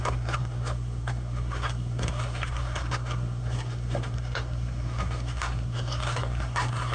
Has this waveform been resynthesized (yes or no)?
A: yes